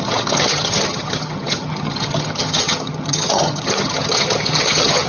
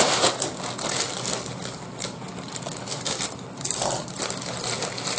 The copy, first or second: first